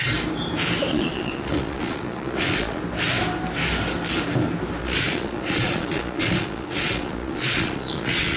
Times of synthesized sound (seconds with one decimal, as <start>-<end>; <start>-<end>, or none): 0.9-2.8; 4.8-8.4